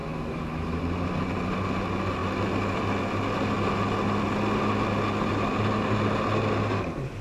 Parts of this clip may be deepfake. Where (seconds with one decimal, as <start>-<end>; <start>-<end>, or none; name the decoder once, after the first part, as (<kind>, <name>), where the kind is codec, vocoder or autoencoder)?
0.0-0.8 (autoencoder, DAC-VAE)